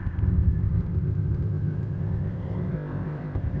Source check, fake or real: fake